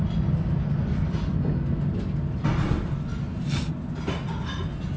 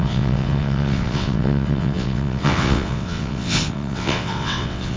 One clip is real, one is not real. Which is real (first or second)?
first